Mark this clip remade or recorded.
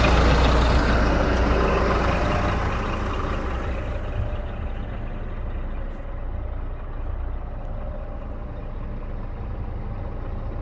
recorded